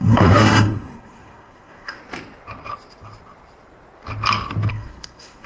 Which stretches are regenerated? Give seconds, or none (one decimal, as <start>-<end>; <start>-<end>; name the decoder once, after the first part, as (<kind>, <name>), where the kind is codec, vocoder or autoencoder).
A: 0.0-2.0 (codec, SNAC); 4.7-5.5